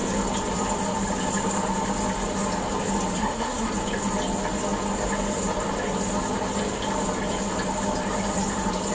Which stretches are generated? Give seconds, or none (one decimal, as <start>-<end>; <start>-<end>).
3.2-3.7